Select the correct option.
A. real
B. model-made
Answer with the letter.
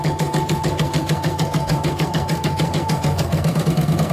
B